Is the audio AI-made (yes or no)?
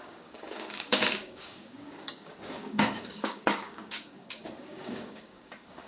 yes